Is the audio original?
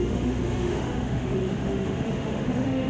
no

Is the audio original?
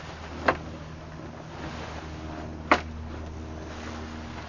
yes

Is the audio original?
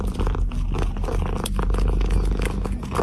yes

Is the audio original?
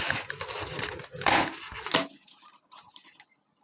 yes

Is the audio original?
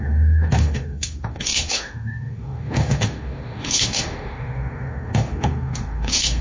no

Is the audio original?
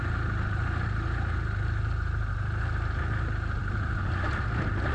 yes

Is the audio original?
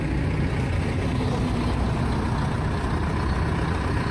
yes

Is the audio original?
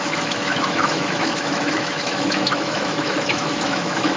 no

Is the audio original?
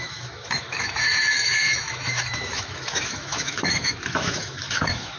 no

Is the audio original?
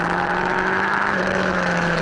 no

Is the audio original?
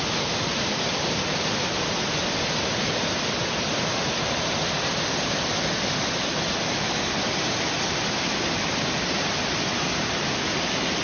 yes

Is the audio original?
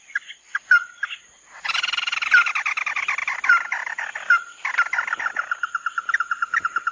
yes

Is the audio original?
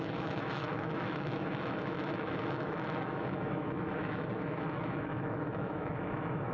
no